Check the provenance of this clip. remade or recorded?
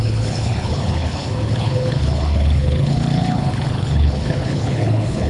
remade